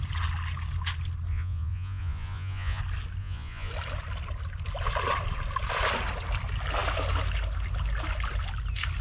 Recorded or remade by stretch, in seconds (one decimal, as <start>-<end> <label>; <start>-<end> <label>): 0.0-1.3 recorded; 1.3-2.8 remade; 2.8-3.2 recorded; 3.2-3.7 remade; 3.7-9.0 recorded